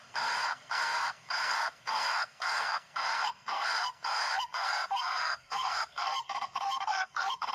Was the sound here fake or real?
fake